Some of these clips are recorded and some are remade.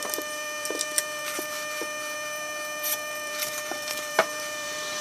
remade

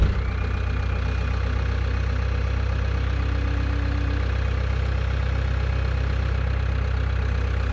recorded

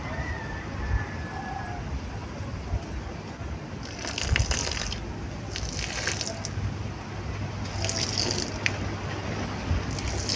recorded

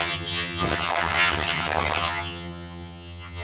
remade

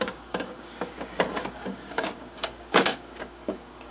remade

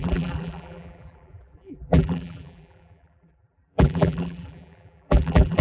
remade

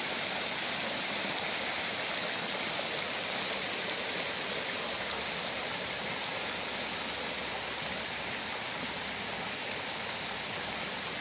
recorded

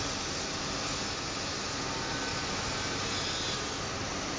recorded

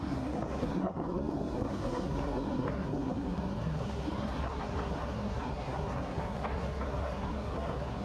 remade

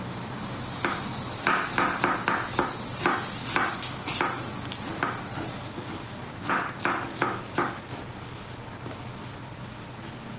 recorded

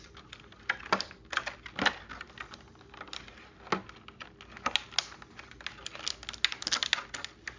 recorded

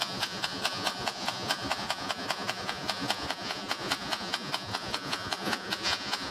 remade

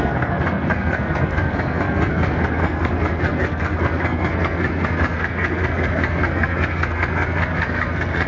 remade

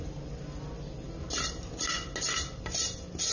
recorded